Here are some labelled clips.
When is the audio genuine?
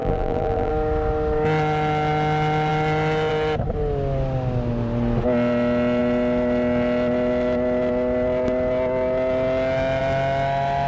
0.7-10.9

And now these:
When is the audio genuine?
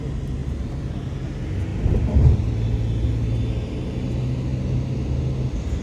0.0-0.4; 0.9-1.7; 2.9-5.8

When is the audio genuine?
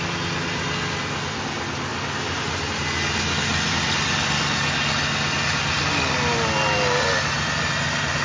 0.0-8.2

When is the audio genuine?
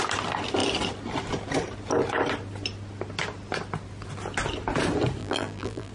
0.0-5.2